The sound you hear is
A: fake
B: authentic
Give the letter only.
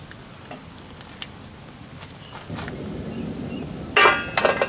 B